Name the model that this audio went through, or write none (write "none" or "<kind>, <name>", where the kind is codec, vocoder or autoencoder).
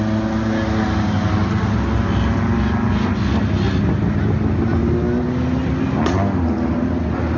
none